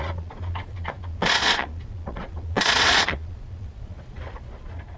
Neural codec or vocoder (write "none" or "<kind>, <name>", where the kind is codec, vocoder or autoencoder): vocoder, Vocos